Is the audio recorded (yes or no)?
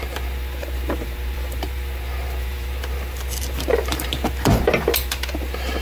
no